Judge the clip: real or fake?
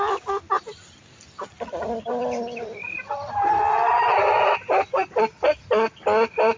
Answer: real